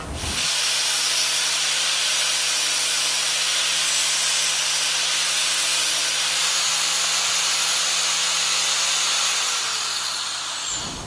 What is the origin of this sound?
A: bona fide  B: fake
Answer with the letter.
A